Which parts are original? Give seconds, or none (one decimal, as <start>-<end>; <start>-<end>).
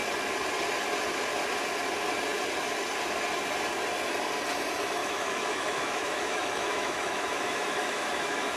0.0-5.0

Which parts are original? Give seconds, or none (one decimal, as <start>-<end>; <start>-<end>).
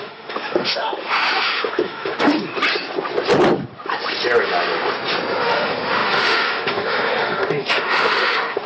2.5-5.4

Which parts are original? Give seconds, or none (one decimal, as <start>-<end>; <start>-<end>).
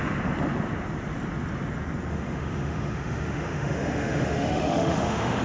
0.0-2.1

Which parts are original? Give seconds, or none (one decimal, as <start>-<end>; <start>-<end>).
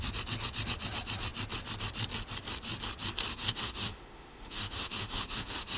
0.0-3.3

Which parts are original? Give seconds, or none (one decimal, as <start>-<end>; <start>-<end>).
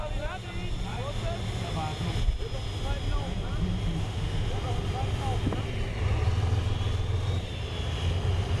0.0-4.0; 4.5-8.6